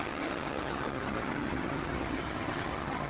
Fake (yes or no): yes